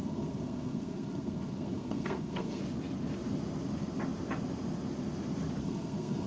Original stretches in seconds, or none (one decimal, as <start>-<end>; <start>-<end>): 2.6-5.6